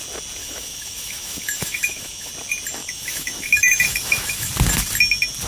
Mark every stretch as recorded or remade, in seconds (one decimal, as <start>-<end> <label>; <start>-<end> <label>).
0.0-0.4 recorded; 0.4-2.3 remade; 2.3-2.8 recorded; 2.8-4.5 remade; 4.5-5.5 recorded